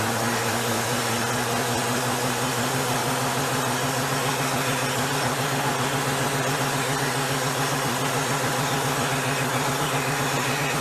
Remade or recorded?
recorded